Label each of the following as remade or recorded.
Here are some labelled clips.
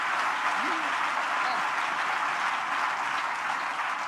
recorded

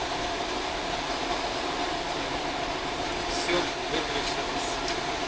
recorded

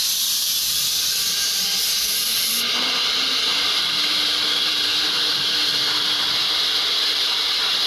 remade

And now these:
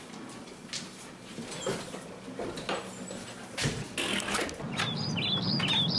recorded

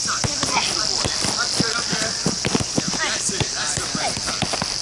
recorded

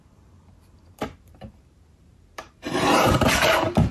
remade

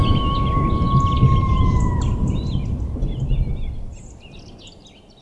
recorded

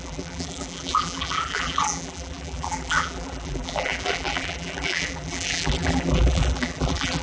remade